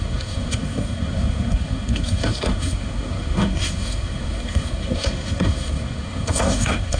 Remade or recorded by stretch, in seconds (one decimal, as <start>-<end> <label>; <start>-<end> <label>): 0.0-7.0 remade